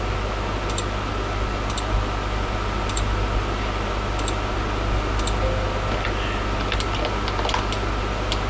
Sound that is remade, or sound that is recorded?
recorded